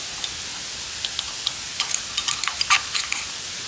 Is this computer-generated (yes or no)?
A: no